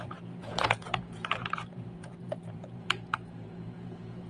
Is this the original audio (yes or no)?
no